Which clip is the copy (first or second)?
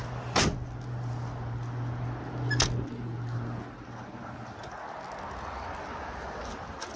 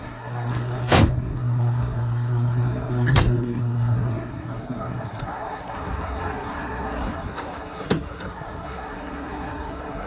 second